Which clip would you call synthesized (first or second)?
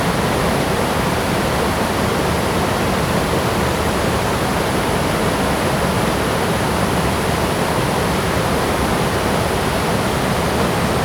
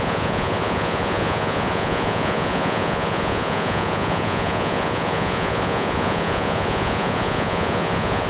second